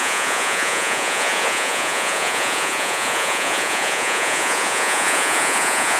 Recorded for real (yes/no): no